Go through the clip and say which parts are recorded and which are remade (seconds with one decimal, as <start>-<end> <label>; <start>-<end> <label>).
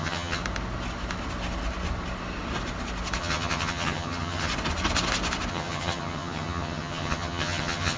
0.0-0.4 remade; 0.4-3.2 recorded; 3.2-4.5 remade; 4.5-5.5 recorded; 5.5-8.0 remade